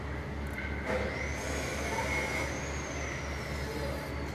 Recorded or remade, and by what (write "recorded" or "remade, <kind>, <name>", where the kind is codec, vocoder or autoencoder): recorded